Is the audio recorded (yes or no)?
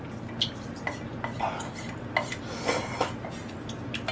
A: yes